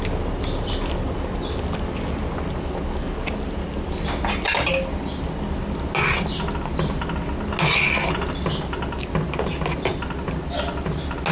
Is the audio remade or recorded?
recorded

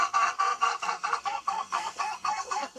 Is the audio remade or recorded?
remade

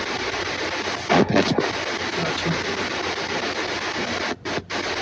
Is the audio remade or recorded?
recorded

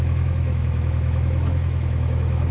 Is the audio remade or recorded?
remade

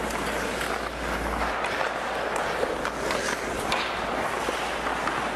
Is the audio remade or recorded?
recorded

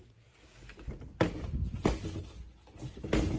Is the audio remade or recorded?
recorded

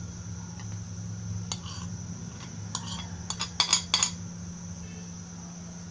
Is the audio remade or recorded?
recorded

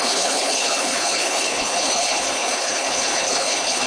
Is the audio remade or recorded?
remade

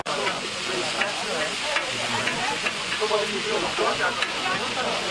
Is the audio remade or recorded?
remade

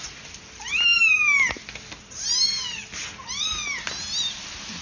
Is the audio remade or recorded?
recorded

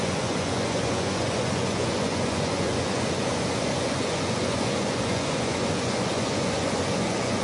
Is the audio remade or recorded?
remade